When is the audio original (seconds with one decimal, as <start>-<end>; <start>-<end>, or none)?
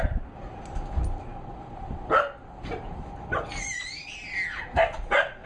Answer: 0.0-5.5